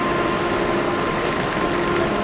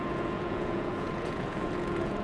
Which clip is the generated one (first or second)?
second